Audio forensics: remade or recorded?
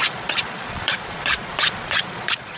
remade